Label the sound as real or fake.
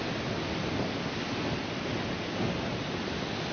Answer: real